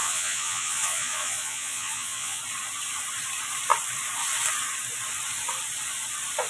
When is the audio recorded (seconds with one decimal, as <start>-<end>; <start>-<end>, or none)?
2.4-6.5